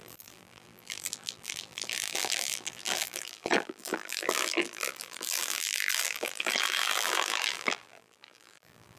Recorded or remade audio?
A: remade